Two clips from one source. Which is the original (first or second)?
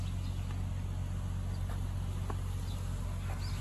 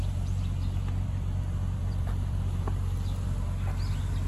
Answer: first